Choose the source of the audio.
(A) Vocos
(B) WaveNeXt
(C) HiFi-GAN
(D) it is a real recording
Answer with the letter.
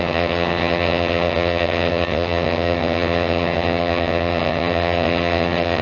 C